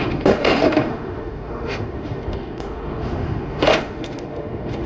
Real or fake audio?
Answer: fake